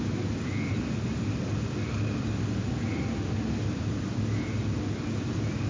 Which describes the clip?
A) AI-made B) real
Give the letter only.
B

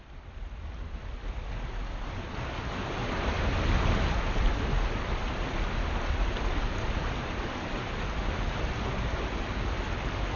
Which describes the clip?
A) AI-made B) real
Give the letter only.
B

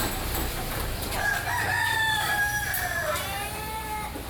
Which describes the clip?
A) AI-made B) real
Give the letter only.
A